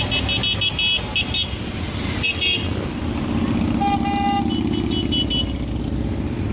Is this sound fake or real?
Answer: real